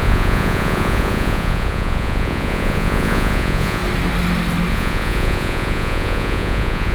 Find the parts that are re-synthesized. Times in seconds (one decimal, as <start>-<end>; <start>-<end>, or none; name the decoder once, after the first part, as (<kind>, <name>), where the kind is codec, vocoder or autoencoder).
0.0-3.8 (vocoder, Vocos); 4.7-6.9